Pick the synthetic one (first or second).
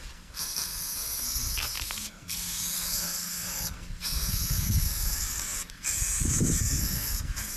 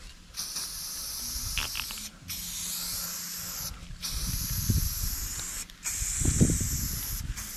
first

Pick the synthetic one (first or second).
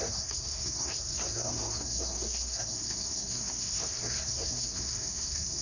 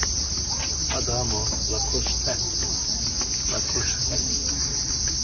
first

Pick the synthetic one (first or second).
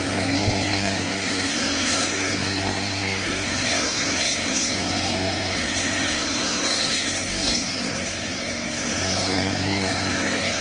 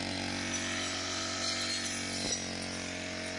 first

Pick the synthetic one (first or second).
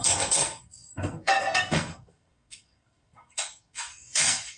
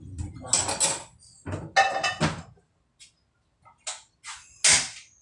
first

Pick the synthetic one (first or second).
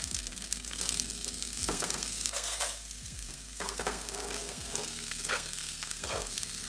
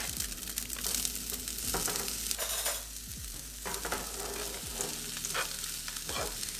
first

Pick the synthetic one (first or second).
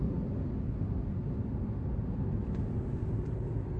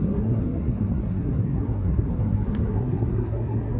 second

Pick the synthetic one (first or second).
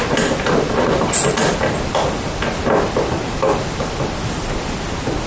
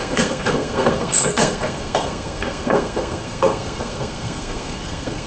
second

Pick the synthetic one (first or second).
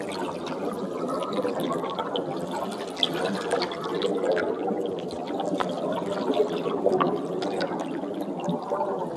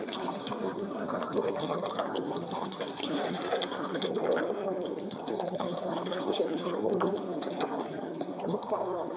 second